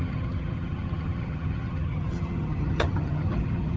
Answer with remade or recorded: remade